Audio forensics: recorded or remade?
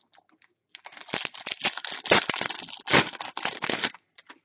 recorded